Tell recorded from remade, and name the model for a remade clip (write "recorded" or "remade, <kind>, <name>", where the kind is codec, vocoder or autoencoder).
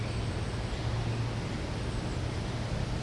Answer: recorded